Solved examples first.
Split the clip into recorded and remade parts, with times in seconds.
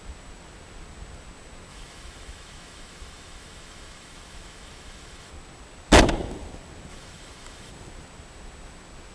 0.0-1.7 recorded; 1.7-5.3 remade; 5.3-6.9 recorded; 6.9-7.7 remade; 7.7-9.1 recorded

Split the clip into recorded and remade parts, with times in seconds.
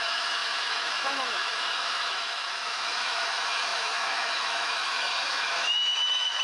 0.0-6.4 remade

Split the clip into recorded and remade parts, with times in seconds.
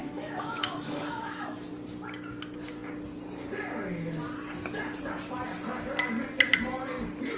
0.0-1.7 remade; 1.7-7.4 recorded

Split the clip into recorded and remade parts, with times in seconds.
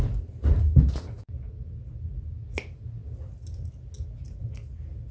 0.0-5.1 recorded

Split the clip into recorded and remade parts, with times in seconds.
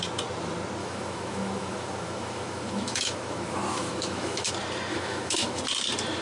0.0-0.8 recorded; 0.8-4.5 remade; 4.5-4.9 recorded; 4.9-5.6 remade; 5.6-6.2 recorded